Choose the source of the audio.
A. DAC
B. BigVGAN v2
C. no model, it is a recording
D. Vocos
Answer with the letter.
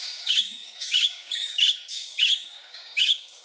A